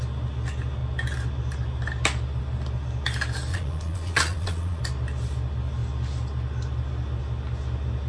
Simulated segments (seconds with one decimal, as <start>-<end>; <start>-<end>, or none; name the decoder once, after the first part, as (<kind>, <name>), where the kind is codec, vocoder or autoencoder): 3.5-4.8 (vocoder, Vocos)